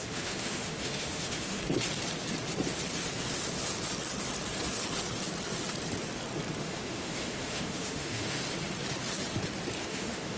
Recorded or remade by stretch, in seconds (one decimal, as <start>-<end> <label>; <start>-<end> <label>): 0.0-1.6 remade; 1.6-6.6 recorded; 6.6-8.4 remade; 8.4-9.8 recorded; 9.8-10.4 remade